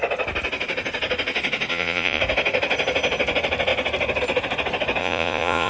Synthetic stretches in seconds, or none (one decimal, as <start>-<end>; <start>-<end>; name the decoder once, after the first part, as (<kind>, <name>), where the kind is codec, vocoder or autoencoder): 1.7-2.2 (vocoder, Vocos); 5.0-5.7